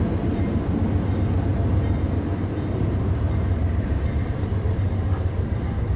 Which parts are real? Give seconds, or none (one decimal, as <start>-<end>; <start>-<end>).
0.0-1.5; 4.4-6.0